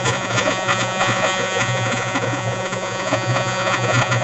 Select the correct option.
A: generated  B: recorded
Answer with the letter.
A